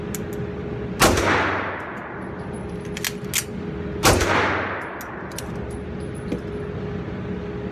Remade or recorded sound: recorded